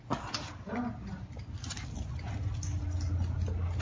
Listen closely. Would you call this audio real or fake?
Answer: real